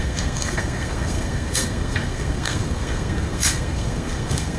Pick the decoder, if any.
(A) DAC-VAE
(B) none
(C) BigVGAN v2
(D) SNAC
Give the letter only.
D